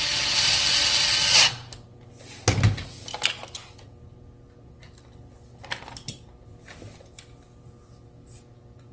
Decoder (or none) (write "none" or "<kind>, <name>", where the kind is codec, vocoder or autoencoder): none